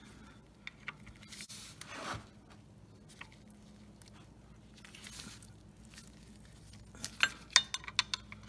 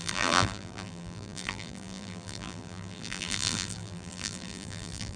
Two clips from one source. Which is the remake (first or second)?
second